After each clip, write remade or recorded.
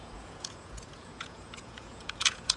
remade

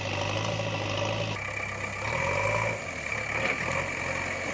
recorded